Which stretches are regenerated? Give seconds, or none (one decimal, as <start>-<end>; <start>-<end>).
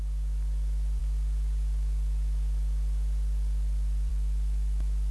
none